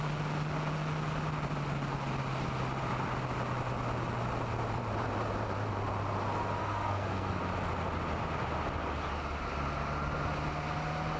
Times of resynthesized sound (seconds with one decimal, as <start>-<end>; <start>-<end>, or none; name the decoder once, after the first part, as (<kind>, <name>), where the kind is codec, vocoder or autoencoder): 6.6-7.4 (codec, SNAC)